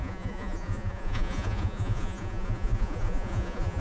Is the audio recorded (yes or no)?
no